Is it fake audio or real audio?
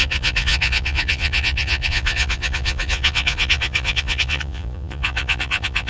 fake